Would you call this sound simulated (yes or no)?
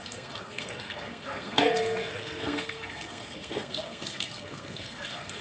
yes